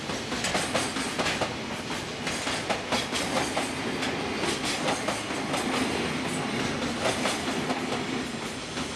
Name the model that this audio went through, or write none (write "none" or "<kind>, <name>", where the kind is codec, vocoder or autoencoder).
none